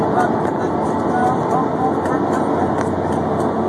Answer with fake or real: real